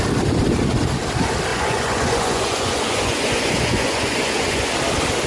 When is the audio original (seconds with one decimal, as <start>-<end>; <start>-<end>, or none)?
0.0-1.5; 4.7-5.3